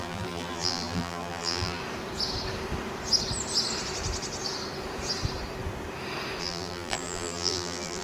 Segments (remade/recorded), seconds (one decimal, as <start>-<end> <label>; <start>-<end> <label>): 0.0-1.8 remade; 1.8-6.4 recorded; 6.4-8.0 remade